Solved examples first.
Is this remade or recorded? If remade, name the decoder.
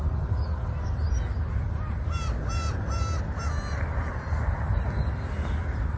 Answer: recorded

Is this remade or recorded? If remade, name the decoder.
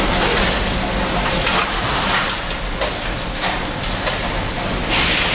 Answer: recorded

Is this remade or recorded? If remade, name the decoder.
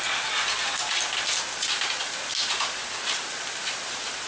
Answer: recorded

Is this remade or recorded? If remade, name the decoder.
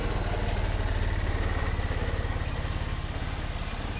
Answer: recorded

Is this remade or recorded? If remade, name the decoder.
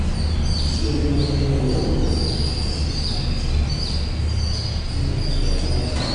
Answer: recorded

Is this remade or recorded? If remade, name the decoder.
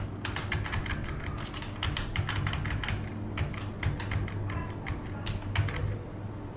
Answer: recorded